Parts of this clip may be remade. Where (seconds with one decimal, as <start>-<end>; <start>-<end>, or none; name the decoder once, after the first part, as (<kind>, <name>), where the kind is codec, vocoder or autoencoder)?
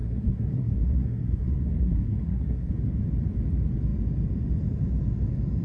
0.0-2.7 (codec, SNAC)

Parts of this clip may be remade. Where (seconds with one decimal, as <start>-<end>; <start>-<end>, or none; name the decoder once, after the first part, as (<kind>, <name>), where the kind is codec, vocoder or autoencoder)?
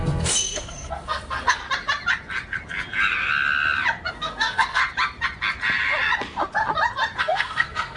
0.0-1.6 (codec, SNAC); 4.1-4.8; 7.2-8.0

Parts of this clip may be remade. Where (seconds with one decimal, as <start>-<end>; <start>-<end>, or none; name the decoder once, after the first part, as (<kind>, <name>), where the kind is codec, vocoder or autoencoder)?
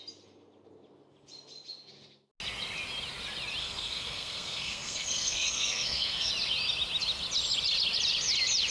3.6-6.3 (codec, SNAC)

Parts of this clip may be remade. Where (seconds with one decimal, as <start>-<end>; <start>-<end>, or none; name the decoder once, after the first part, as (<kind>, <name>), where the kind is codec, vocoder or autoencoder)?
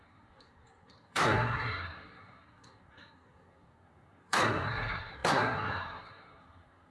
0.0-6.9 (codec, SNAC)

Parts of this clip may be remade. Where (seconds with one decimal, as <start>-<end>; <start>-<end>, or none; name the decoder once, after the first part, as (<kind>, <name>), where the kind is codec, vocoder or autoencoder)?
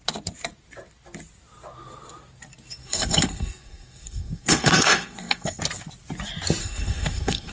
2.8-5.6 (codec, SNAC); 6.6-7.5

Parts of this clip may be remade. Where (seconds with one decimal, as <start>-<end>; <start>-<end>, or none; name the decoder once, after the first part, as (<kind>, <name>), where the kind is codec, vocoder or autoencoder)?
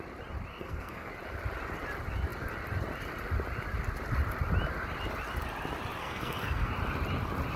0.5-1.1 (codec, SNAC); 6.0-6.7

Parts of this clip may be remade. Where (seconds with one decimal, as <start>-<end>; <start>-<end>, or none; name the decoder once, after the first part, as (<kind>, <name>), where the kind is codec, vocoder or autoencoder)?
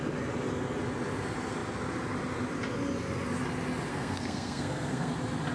3.9-5.1 (codec, SNAC)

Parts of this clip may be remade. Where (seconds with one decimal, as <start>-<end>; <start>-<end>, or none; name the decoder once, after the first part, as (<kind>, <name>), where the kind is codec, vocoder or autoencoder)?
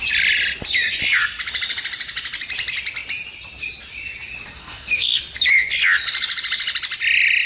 4.6-5.2 (codec, SNAC)